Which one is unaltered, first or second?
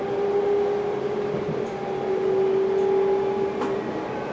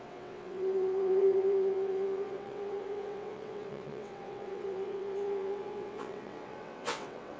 first